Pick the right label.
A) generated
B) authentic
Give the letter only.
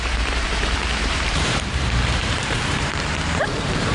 A